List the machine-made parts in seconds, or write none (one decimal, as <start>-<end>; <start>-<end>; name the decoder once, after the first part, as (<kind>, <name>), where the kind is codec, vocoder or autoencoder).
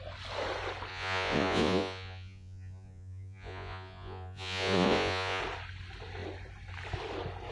0.9-5.4 (vocoder, Vocos)